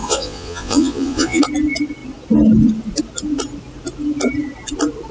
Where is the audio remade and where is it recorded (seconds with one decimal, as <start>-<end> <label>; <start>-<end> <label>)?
0.0-1.4 remade; 1.4-5.1 recorded